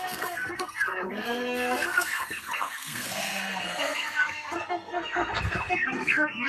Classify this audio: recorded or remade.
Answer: remade